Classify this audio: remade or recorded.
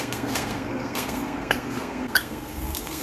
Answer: remade